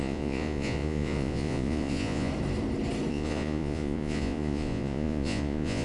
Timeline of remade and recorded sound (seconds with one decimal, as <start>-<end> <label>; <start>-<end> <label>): 0.0-2.3 remade; 2.3-3.1 recorded; 3.1-5.8 remade